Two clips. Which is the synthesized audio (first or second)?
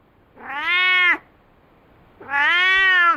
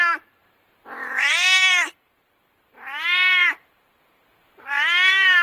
second